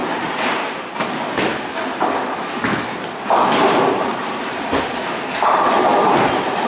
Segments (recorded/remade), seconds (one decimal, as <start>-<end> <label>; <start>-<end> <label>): 0.0-3.5 recorded; 3.5-5.9 remade; 5.9-6.7 recorded